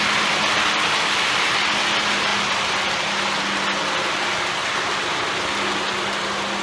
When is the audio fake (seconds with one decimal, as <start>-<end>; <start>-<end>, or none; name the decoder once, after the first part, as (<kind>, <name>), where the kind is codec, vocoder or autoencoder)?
none